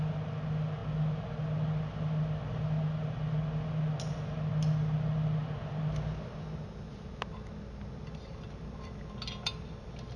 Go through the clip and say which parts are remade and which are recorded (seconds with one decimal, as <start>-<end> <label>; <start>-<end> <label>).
0.0-10.2 recorded